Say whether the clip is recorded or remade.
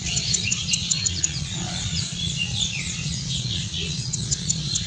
remade